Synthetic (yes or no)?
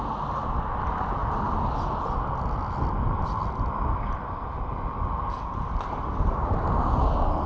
no